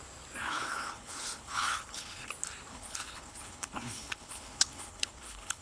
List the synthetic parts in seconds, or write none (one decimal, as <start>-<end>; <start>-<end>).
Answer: 0.4-2.3; 2.7-5.6